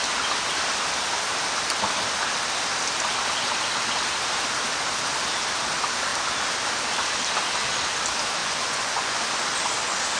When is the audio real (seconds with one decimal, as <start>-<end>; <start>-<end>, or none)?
0.0-8.4; 9.2-10.2